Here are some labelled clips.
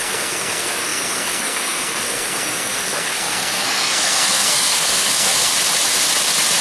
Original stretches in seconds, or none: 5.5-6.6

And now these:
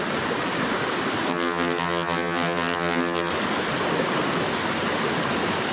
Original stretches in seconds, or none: 0.0-1.3; 3.3-5.7

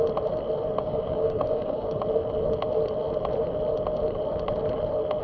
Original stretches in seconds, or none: 0.0-0.8; 2.0-5.2

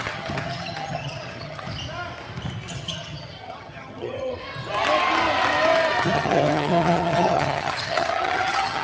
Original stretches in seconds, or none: 1.7-2.7; 4.4-6.0